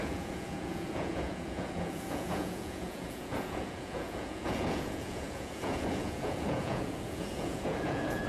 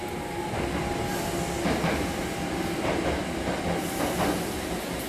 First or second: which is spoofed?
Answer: first